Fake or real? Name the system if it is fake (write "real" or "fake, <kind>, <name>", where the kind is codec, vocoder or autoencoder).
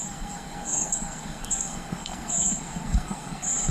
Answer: fake, codec, SNAC